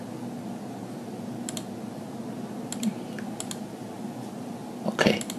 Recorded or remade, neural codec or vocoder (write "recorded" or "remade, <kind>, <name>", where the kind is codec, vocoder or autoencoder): recorded